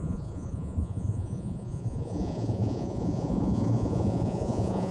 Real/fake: fake